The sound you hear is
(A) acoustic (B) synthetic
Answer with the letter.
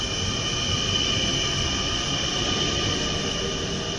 A